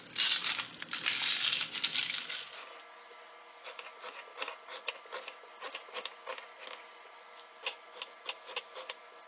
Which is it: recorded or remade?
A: recorded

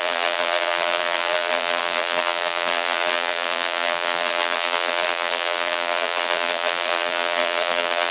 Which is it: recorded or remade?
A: remade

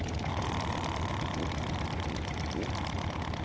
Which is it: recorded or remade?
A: remade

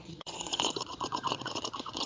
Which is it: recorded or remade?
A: remade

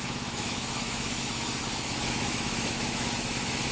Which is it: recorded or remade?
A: remade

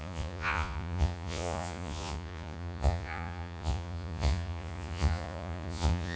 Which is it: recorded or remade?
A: remade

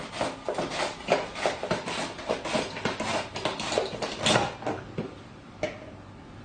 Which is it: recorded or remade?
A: recorded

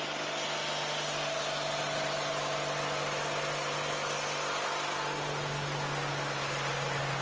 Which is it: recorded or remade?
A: recorded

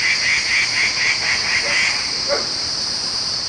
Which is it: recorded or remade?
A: recorded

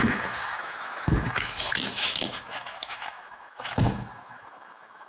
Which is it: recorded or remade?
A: remade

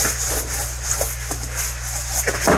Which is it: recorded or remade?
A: recorded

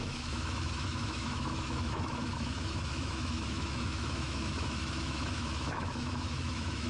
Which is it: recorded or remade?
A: remade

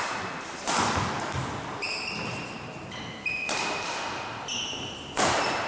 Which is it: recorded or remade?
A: recorded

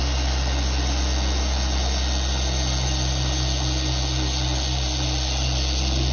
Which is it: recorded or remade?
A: recorded